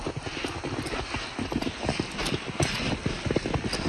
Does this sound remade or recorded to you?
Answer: recorded